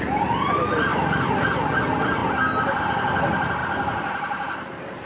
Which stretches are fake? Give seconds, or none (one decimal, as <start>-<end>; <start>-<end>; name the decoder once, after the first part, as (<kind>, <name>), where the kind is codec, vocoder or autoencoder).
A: 3.6-5.1 (vocoder, BigVGAN v2)